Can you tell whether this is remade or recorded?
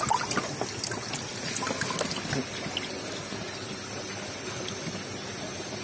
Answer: recorded